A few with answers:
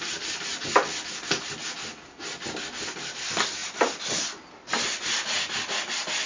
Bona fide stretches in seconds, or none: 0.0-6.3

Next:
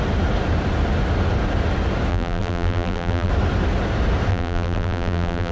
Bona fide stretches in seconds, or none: 0.0-2.1; 3.3-4.3

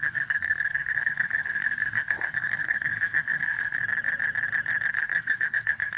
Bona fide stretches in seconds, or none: 3.8-4.9

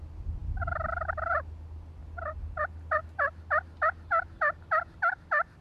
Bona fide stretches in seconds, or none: 0.0-5.6

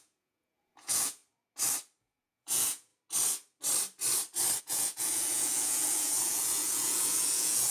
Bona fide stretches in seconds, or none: 1.2-2.0; 2.9-4.6

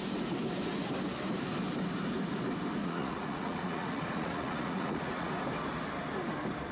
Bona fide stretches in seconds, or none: 0.0-2.8; 5.3-6.7

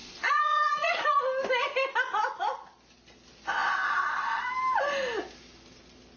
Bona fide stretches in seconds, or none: 1.2-6.2

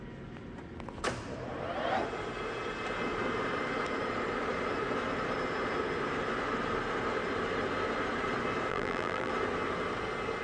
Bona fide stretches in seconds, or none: 0.0-8.7; 9.3-10.4